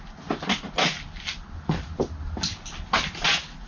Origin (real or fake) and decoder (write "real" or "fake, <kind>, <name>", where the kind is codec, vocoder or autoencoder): real